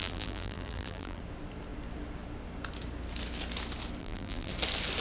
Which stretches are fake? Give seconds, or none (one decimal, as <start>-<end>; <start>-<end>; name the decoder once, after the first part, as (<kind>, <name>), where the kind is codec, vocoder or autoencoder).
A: 0.0-1.2 (vocoder, BigVGAN v2); 4.0-4.5